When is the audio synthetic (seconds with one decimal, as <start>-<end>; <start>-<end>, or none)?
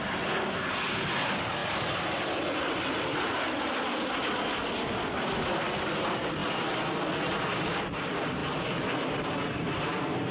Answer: 1.6-4.1; 6.4-7.0